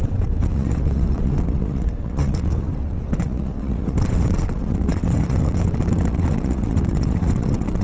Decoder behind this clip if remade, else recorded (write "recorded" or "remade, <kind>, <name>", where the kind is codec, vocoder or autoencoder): remade, vocoder, WaveNeXt